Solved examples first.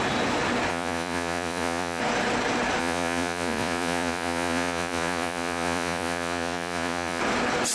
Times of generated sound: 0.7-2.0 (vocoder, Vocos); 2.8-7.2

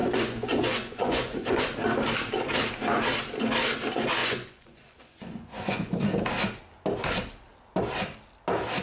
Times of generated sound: 0.0-1.6 (vocoder, Vocos); 4.2-5.9

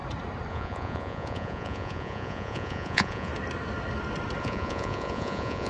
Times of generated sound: 0.5-3.3 (vocoder, Vocos); 4.4-5.7

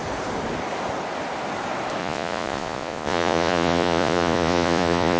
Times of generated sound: 2.0-5.2 (vocoder, Vocos)

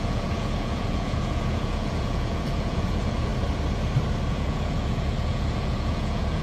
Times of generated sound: 0.0-3.3 (vocoder, Vocos); 4.3-6.4

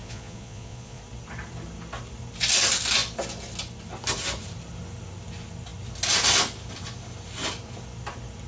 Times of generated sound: 0.0-1.0 (vocoder, Vocos)

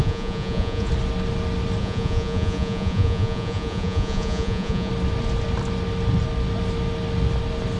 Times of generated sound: 0.0-0.9 (vocoder, Vocos); 1.8-4.9